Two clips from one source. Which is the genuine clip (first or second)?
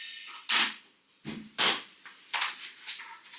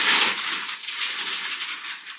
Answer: first